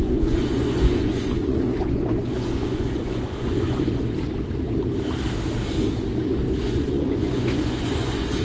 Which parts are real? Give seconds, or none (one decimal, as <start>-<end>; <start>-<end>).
4.0-6.6